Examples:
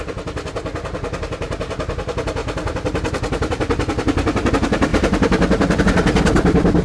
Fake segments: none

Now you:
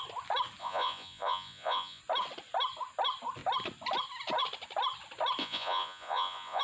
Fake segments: 0.6-2.0 (vocoder, Vocos); 5.4-6.6

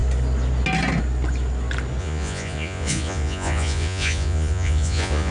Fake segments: 2.0-5.3 (vocoder, Vocos)

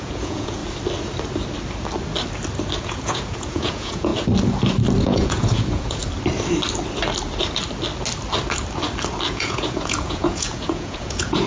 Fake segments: 0.0-0.6 (vocoder, Vocos); 2.8-4.1; 5.0-6.0; 9.3-11.5

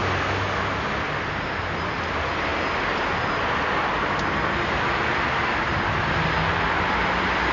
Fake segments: none

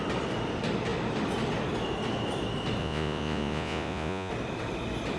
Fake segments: 2.8-4.3 (vocoder, Vocos)

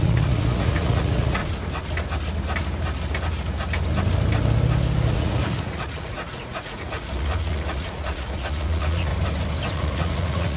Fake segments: 0.0-1.4 (vocoder, Vocos); 5.1-9.1; 9.7-10.6

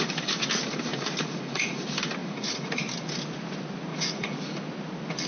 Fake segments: 0.9-1.8 (vocoder, Vocos); 2.2-2.8; 3.9-4.6